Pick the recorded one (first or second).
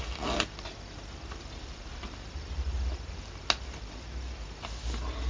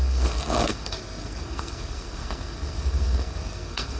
first